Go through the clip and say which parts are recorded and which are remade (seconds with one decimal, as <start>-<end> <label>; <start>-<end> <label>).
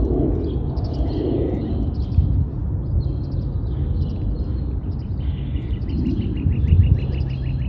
0.0-7.7 recorded